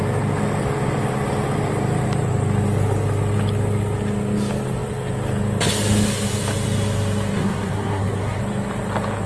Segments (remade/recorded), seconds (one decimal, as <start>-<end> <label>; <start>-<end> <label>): 0.0-7.4 recorded; 7.4-8.4 remade; 8.4-9.3 recorded